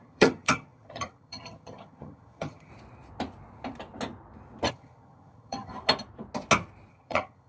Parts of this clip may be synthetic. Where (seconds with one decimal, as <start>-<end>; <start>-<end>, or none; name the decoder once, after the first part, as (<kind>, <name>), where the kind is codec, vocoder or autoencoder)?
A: 0.0-2.7 (vocoder, HiFi-GAN); 4.7-5.7; 6.9-7.5